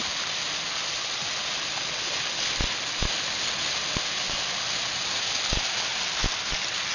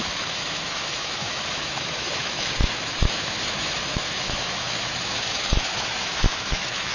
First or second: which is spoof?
second